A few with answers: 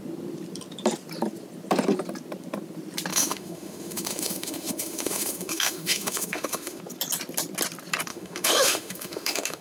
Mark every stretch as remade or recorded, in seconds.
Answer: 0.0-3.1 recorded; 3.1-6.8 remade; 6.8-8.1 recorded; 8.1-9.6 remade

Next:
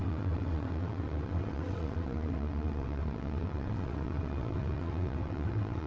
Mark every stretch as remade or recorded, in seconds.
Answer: 0.0-5.9 remade

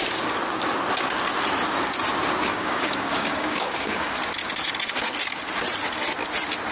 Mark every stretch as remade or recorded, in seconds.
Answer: 0.0-2.5 recorded; 2.5-4.1 remade; 4.1-6.7 recorded

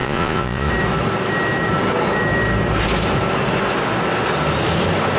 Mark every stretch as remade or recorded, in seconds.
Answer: 0.0-0.7 remade; 0.7-5.2 recorded

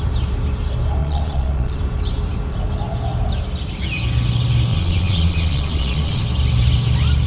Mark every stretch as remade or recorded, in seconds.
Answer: 0.0-1.0 recorded; 1.0-1.8 remade; 1.8-4.7 recorded; 4.7-6.2 remade; 6.2-7.3 recorded

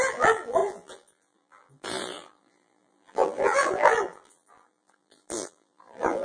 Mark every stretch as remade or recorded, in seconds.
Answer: 0.0-6.2 remade

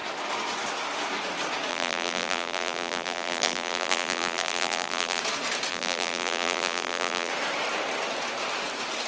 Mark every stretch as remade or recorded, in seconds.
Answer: 0.0-1.7 recorded; 1.7-5.2 remade; 5.2-5.7 recorded; 5.7-7.3 remade; 7.3-9.1 recorded

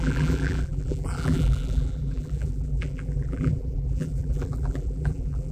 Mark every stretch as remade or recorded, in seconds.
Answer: 0.0-5.5 remade